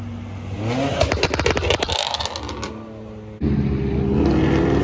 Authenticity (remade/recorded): recorded